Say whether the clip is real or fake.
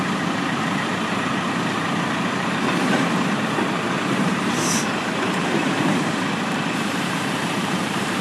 fake